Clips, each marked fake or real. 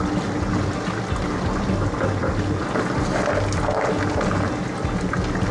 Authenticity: real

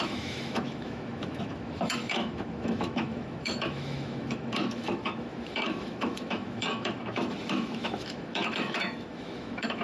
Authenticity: fake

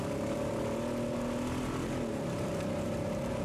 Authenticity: real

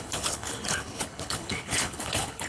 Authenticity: fake